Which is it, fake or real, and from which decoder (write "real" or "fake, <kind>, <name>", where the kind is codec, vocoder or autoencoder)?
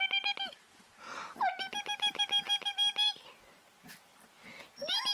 real